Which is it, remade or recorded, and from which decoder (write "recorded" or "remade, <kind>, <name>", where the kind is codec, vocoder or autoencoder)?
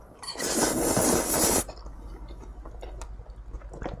recorded